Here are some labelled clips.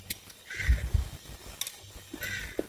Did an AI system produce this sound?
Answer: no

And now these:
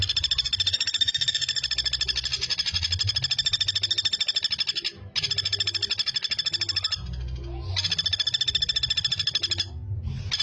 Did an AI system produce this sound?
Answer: no